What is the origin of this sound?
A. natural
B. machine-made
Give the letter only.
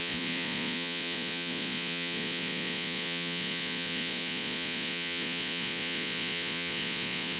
B